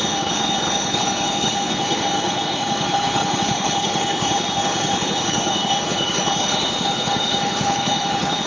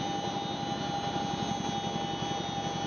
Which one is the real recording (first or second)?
second